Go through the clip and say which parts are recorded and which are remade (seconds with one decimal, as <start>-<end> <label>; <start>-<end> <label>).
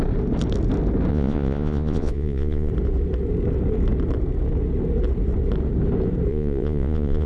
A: 0.0-1.1 recorded; 1.1-2.7 remade; 2.7-6.3 recorded; 6.3-7.3 remade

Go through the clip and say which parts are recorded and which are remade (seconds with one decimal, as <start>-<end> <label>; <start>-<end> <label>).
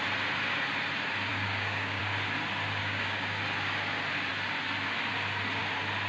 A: 0.0-1.3 recorded; 1.3-2.0 remade; 2.0-2.8 recorded; 2.8-3.4 remade; 3.4-6.1 recorded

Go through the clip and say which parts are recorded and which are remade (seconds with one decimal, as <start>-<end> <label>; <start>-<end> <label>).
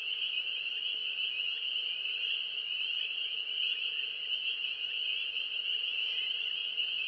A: 0.0-7.1 recorded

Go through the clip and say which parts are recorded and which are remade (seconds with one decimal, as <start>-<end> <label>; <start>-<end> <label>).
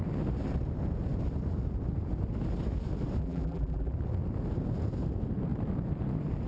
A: 0.0-3.2 recorded; 3.2-3.9 remade; 3.9-6.5 recorded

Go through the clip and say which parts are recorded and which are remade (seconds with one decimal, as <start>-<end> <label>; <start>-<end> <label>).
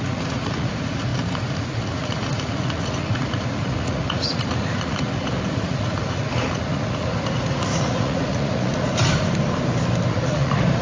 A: 0.0-8.9 remade; 8.9-10.1 recorded; 10.1-10.8 remade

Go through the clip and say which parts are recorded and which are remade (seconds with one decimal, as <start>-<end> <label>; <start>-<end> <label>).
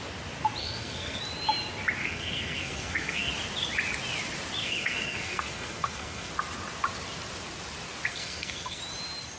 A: 0.0-0.6 recorded; 0.6-1.2 remade; 1.2-2.0 recorded; 2.0-3.3 remade; 3.3-4.6 recorded; 4.6-6.3 remade; 6.3-8.1 recorded; 8.1-8.8 remade; 8.8-9.4 recorded